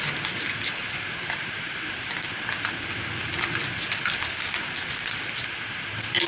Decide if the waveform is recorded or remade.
recorded